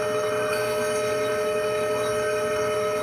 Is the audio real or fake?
fake